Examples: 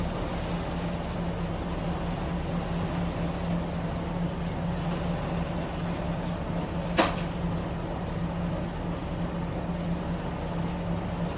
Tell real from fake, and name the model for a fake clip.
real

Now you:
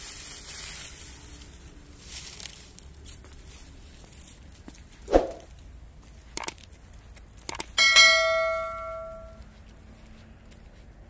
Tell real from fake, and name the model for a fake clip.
real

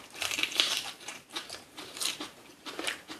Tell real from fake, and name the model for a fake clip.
fake, vocoder, BigVGAN v2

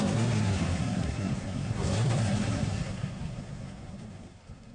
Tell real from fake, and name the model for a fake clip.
fake, codec, SNAC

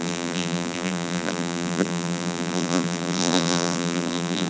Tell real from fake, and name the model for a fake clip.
fake, vocoder, BigVGAN v2